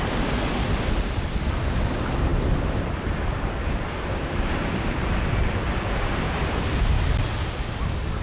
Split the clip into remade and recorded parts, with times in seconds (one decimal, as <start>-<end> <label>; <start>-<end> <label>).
0.0-8.2 recorded